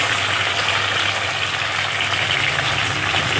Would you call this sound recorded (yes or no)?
yes